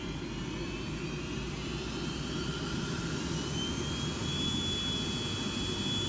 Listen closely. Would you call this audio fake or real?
real